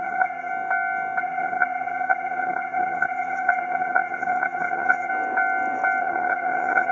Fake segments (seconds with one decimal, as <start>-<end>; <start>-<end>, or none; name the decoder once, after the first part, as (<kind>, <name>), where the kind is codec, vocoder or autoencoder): 0.0-0.5 (vocoder, HiFi-GAN); 1.2-5.1; 6.0-6.9